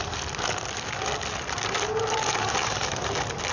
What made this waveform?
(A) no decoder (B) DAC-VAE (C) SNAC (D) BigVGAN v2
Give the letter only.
A